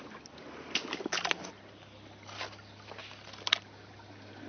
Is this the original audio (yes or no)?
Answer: yes